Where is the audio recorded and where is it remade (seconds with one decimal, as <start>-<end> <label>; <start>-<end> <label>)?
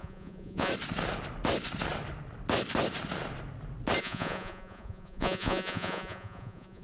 0.0-0.7 remade; 0.7-4.0 recorded; 4.0-6.8 remade